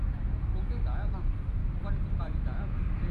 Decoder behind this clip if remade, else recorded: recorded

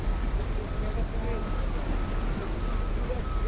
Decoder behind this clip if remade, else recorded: recorded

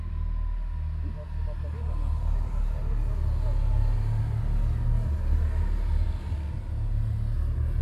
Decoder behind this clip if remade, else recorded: recorded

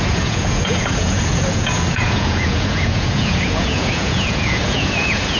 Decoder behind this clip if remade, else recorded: remade, vocoder, Vocos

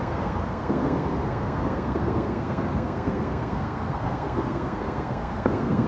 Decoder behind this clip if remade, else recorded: remade, codec, SNAC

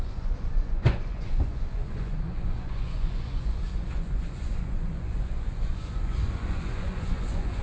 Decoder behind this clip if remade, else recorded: remade, vocoder, Vocos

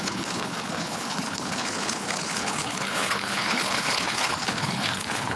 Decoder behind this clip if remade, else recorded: remade, codec, HILCodec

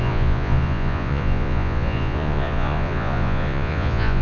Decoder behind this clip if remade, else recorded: remade, vocoder, Vocos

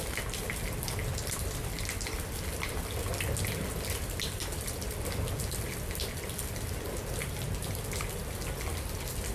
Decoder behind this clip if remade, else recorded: recorded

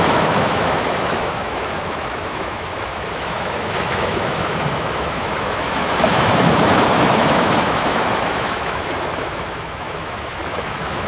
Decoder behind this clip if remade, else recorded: remade, autoencoder, DAC-VAE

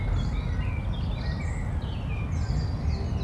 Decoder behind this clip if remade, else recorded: recorded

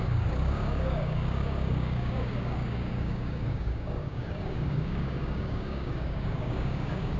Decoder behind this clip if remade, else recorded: remade, codec, DAC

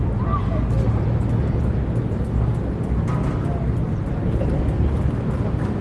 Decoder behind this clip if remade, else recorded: recorded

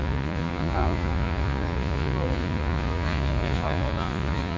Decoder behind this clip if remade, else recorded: remade, vocoder, Vocos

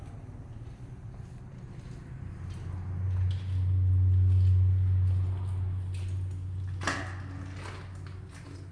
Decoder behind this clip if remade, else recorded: recorded